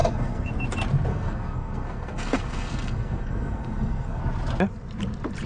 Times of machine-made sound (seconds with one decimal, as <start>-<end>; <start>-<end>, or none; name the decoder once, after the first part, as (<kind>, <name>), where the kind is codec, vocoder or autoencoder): 0.0-0.5 (codec, SNAC); 1.1-4.2